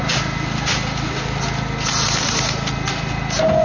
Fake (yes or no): no